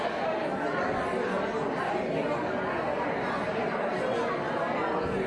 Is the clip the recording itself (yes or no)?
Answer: yes